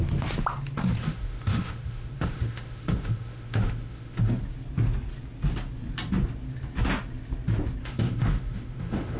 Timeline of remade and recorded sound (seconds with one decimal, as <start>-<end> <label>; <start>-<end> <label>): 0.0-1.0 recorded; 1.0-4.3 remade; 4.3-7.8 recorded; 7.8-9.2 remade